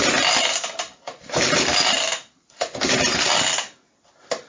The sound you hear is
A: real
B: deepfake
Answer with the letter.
A